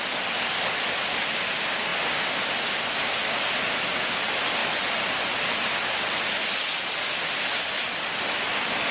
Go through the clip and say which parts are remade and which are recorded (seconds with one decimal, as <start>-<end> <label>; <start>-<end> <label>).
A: 0.0-8.9 recorded